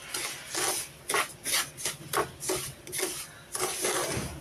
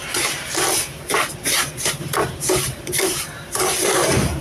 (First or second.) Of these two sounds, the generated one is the second